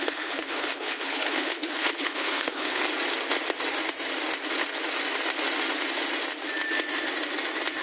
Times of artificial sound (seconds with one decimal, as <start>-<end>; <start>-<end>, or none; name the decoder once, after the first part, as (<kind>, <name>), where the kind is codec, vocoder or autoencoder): 0.0-2.8 (codec, HILCodec)

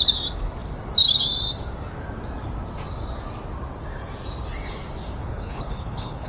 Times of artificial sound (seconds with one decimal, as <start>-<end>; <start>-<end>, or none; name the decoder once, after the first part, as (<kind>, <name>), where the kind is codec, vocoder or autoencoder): 5.2-6.3 (codec, HILCodec)

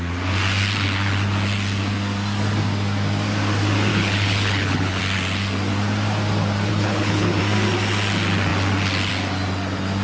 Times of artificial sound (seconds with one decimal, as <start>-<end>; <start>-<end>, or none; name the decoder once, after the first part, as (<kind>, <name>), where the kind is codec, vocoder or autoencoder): 3.9-5.0 (codec, HILCodec); 6.7-7.4